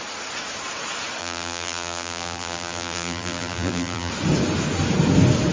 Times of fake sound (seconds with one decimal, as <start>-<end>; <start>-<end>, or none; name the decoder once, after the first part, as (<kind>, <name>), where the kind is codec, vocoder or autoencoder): 1.2-4.1 (vocoder, BigVGAN v2)

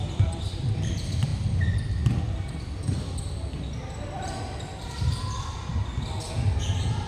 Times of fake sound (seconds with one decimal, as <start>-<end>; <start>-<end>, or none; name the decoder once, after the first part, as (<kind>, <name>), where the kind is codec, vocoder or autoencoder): 0.0-5.7 (vocoder, BigVGAN v2)

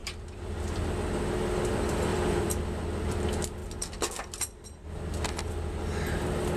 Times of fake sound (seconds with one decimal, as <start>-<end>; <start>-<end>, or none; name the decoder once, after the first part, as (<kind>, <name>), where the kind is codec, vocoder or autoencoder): 0.0-0.8 (vocoder, BigVGAN v2); 2.1-2.6

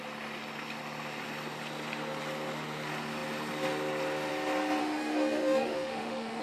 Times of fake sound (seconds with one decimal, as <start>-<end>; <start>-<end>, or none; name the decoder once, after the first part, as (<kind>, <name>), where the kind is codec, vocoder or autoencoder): 4.8-6.4 (autoencoder, DAC-VAE)

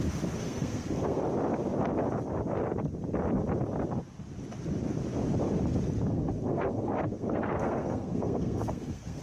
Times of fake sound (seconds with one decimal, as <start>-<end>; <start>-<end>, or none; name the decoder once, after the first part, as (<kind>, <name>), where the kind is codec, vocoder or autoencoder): 0.4-1.2 (codec, SNAC); 6.1-9.2

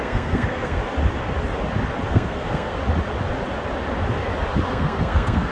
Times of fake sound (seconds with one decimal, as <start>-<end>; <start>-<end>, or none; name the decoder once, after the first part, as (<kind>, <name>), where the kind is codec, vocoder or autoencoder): 0.0-0.8 (codec, SNAC); 2.1-2.8; 4.7-5.5